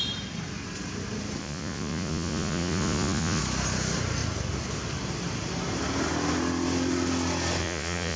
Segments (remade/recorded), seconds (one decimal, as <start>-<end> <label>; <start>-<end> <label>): 0.0-1.4 recorded; 1.4-3.4 remade; 3.4-7.6 recorded; 7.6-8.2 remade